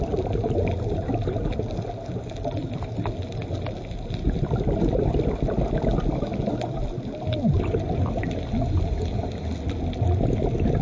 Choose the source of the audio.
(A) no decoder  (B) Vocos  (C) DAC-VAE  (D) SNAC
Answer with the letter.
A